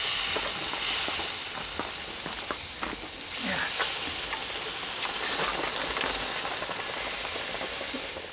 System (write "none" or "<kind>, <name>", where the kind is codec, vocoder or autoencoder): none